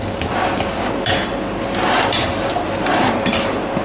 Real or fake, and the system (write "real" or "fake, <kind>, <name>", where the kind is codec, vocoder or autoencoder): real